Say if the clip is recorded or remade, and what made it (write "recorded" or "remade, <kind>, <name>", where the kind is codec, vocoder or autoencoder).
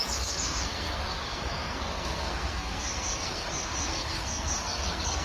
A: remade, codec, SNAC